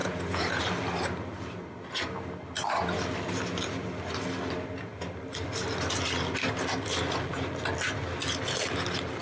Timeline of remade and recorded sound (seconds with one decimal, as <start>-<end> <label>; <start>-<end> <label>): 0.0-0.6 remade; 0.6-9.2 recorded